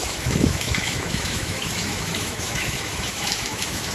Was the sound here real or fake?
fake